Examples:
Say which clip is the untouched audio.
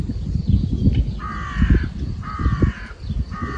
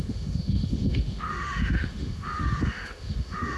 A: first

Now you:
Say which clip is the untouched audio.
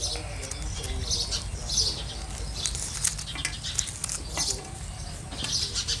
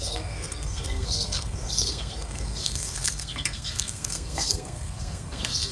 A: first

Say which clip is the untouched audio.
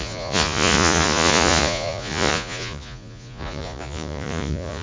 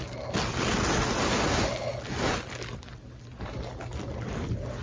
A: second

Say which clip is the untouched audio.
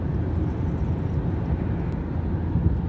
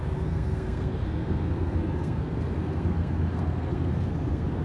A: first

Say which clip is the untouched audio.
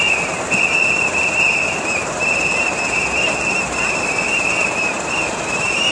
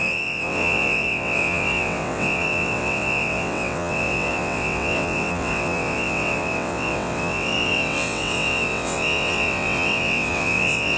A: first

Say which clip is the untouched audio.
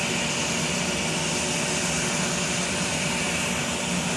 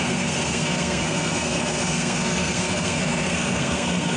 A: first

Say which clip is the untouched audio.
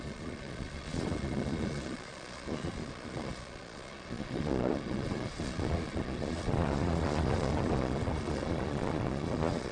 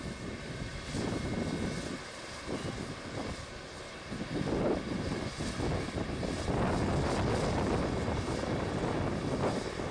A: second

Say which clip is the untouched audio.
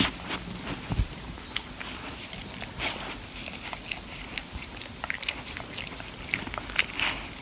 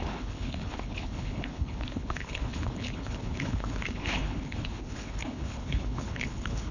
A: first